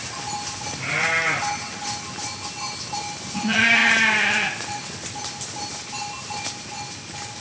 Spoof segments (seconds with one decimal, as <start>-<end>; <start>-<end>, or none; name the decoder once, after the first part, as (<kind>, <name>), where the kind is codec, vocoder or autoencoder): none